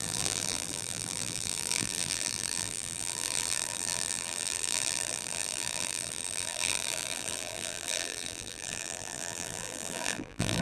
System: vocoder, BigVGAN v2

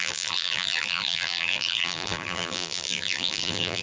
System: vocoder, BigVGAN v2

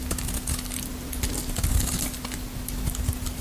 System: none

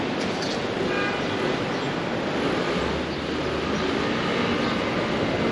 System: none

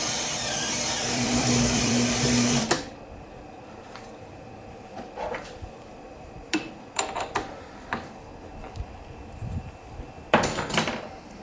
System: vocoder, BigVGAN v2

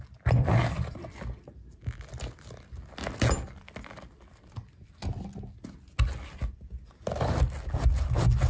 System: none